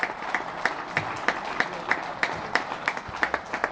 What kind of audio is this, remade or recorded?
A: recorded